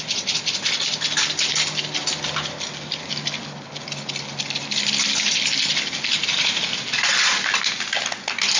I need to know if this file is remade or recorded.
recorded